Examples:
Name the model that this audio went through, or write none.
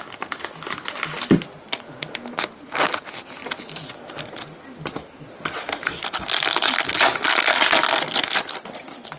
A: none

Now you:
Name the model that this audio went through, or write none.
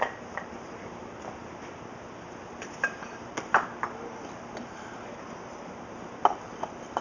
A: none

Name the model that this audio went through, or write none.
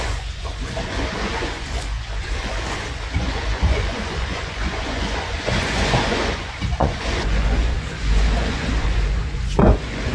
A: vocoder, Vocos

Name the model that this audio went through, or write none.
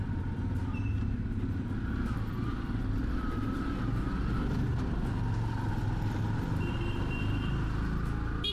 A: none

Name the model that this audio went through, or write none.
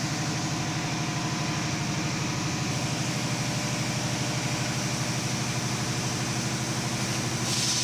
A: none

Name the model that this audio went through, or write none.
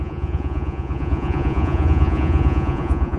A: vocoder, Vocos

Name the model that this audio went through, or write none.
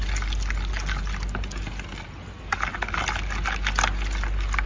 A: none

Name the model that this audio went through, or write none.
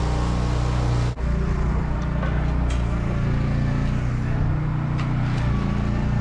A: none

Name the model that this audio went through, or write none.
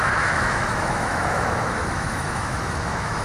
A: autoencoder, DAC-VAE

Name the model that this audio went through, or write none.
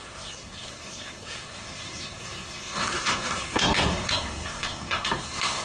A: codec, SNAC